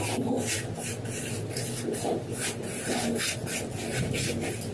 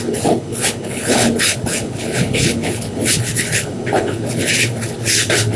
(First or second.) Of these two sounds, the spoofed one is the second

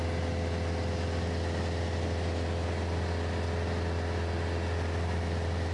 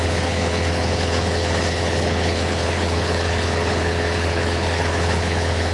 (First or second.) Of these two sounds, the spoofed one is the second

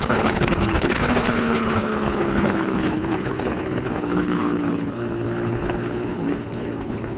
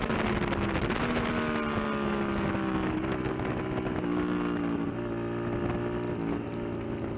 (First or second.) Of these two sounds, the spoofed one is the first